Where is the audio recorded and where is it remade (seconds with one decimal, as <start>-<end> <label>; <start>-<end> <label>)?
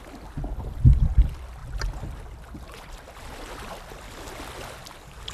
0.0-5.3 recorded